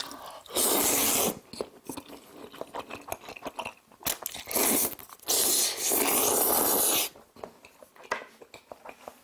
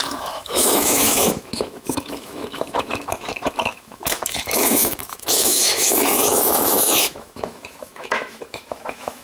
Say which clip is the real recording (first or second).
first